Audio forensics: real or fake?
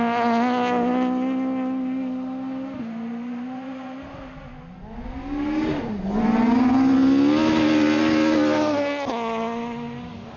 real